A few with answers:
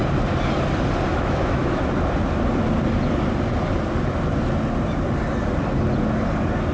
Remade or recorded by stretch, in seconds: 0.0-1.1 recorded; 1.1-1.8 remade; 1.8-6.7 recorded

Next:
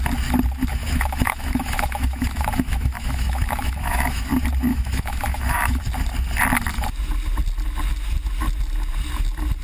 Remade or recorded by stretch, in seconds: 0.0-0.7 recorded; 0.7-4.2 remade; 4.2-4.7 recorded; 4.7-5.8 remade; 5.8-9.6 recorded

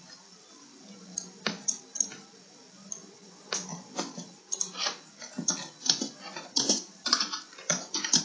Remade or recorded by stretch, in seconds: 0.0-3.0 recorded; 3.0-3.7 remade; 3.7-6.3 recorded; 6.3-8.2 remade

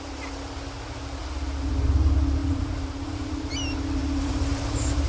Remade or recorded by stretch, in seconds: 0.0-2.4 recorded; 2.4-3.5 remade; 3.5-4.0 recorded; 4.0-5.1 remade

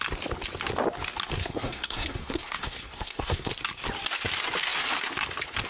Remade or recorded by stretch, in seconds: 0.0-1.4 recorded; 1.4-3.5 remade; 3.5-5.7 recorded

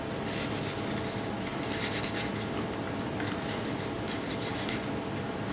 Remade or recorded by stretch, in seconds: 0.0-1.5 recorded; 1.5-4.8 remade; 4.8-5.5 recorded

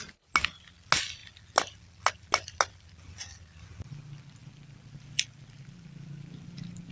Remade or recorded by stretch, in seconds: 0.0-6.9 recorded